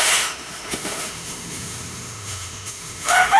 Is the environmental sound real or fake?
fake